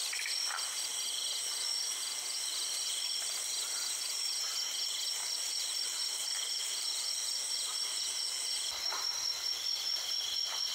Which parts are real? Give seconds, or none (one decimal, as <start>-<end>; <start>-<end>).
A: 0.8-2.5; 3.2-10.7